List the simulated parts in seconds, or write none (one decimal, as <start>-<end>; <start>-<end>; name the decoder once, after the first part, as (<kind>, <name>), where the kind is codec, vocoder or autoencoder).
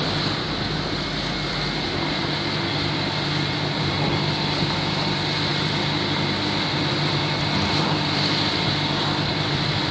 none